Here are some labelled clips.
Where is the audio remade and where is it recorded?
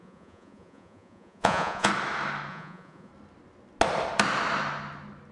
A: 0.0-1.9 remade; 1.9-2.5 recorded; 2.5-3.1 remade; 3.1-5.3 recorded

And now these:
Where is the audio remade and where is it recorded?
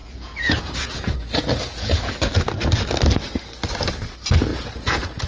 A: 0.0-2.1 remade; 2.1-4.5 recorded; 4.5-5.3 remade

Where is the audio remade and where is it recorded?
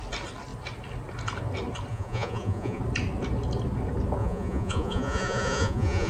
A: 0.0-1.9 recorded; 1.9-2.8 remade; 2.8-4.2 recorded; 4.2-6.1 remade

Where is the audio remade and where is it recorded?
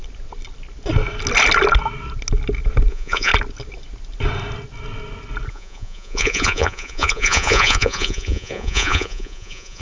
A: 0.0-2.9 recorded; 2.9-3.3 remade; 3.3-5.5 recorded; 5.5-9.8 remade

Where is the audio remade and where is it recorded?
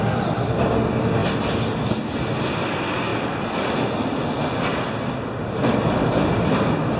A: 0.0-7.0 recorded